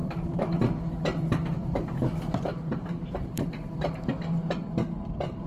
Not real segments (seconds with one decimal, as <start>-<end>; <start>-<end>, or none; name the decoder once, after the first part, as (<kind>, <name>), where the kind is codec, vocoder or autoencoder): 0.0-0.6 (vocoder, BigVGAN v2); 1.6-4.1